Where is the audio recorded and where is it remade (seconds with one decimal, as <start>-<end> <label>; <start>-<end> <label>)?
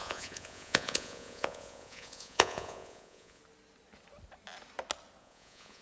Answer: 0.0-3.4 remade; 3.4-5.2 recorded; 5.2-5.8 remade